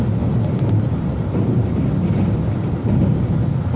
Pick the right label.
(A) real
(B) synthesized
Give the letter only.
A